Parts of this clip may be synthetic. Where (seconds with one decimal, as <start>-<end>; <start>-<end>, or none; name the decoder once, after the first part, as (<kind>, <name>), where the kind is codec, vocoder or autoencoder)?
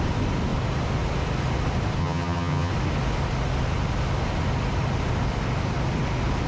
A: 2.0-2.7 (vocoder, HiFi-GAN)